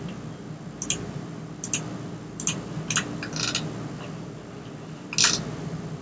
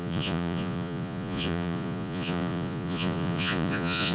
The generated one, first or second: second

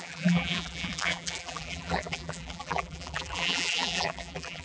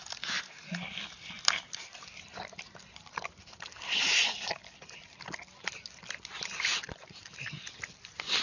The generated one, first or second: first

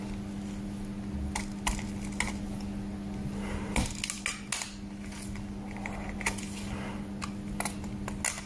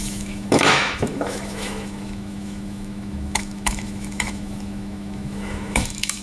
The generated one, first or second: second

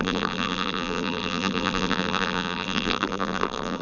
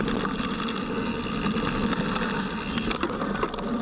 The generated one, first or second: first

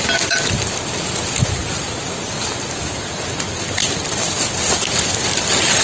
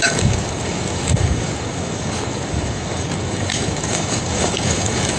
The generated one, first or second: second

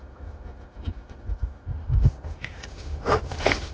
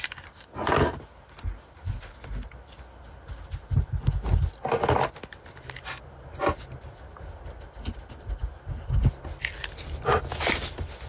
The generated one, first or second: first